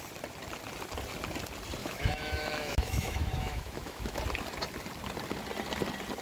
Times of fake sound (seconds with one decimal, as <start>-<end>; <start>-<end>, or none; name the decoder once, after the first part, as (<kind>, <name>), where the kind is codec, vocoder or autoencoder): 1.8-4.2 (autoencoder, DAC-VAE)